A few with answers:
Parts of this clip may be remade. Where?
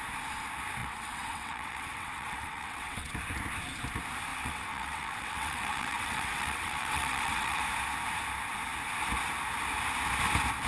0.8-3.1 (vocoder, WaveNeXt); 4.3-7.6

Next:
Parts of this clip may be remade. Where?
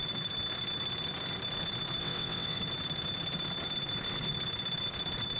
2.0-2.6 (vocoder, WaveNeXt)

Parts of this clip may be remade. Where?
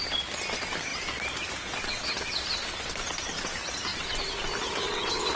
none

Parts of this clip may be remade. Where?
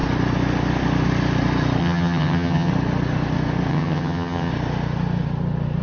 1.8-2.7 (vocoder, HiFi-GAN); 3.7-4.5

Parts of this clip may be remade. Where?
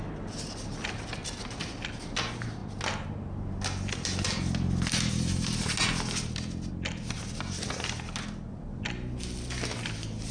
none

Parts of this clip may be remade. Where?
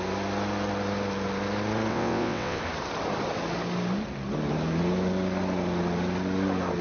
1.9-2.6 (vocoder, WaveNeXt)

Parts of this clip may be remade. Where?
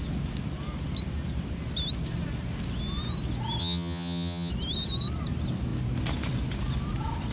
3.6-4.5 (vocoder, HiFi-GAN)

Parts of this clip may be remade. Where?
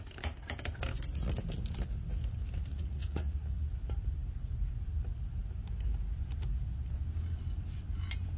2.7-3.7 (vocoder, Vocos)